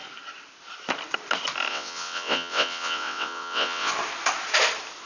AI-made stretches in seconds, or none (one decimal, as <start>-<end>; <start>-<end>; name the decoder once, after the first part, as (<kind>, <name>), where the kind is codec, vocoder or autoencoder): 1.7-3.9 (vocoder, WaveNeXt)